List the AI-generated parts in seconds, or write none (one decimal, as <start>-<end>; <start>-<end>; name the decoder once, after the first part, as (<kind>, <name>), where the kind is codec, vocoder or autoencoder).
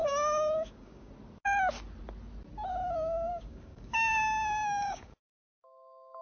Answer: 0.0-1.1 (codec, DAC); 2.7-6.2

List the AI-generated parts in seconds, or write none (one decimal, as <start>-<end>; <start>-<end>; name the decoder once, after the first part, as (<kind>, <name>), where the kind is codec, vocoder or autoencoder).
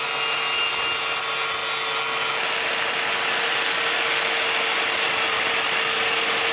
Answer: none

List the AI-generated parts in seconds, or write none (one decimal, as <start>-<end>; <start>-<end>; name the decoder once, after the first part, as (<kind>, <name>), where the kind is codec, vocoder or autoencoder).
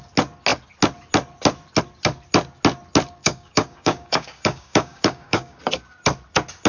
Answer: 3.2-5.6 (codec, DAC)